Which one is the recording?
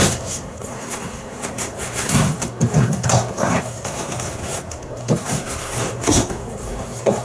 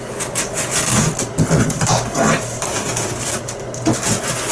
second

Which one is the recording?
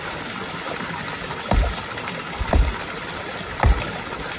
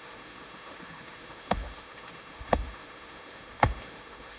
first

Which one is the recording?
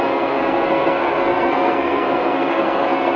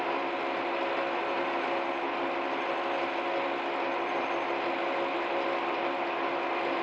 second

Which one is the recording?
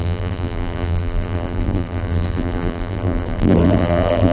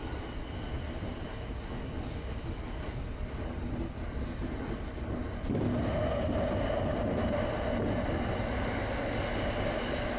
second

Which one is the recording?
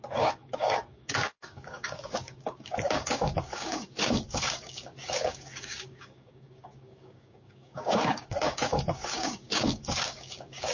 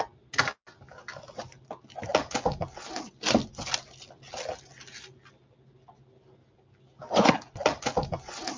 second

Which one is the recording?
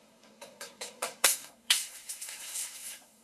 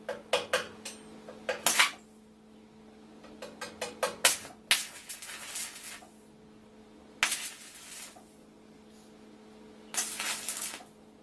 second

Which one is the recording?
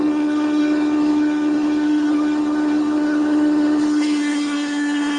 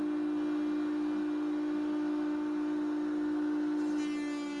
second